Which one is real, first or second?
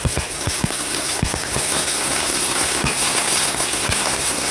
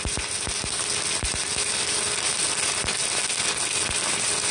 second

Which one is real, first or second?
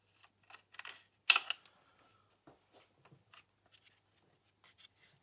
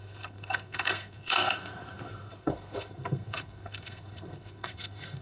first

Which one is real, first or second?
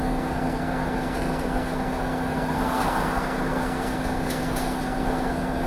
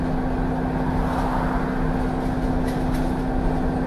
second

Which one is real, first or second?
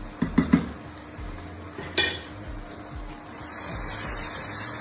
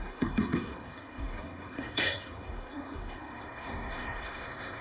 first